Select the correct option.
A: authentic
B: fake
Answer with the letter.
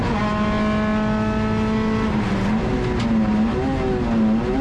A